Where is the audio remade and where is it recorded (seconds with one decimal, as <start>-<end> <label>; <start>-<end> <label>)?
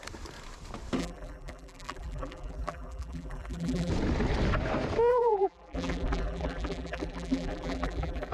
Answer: 0.0-1.0 recorded; 1.0-3.9 remade; 3.9-5.1 recorded; 5.1-8.3 remade